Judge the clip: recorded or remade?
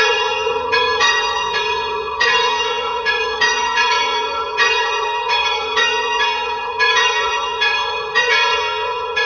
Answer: remade